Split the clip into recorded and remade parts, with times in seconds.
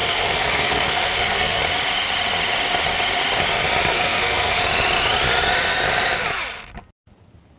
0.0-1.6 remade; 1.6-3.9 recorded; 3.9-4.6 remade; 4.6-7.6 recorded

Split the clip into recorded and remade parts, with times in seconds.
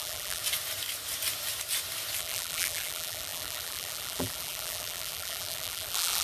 0.0-0.4 remade; 0.4-2.2 recorded; 2.2-6.2 remade